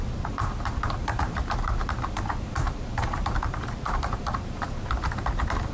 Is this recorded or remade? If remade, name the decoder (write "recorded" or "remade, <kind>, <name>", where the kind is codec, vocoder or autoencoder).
remade, vocoder, BigVGAN v2